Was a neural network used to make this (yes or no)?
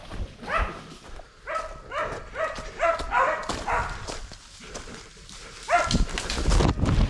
no